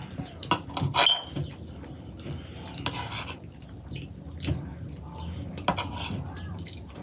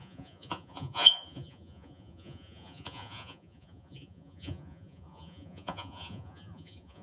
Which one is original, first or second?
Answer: first